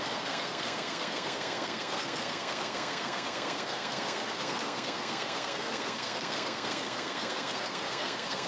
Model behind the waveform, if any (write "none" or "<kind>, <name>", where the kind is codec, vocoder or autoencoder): codec, SNAC